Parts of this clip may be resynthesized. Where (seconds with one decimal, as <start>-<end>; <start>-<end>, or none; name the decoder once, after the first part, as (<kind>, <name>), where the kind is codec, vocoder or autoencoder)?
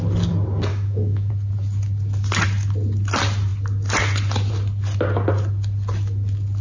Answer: 0.7-1.3 (autoencoder, DAC-VAE)